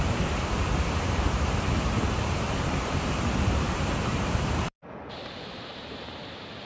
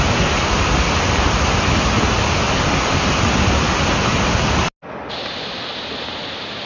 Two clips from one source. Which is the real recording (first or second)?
second